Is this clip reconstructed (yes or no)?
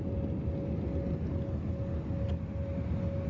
no